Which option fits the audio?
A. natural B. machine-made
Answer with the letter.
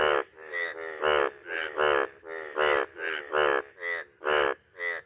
A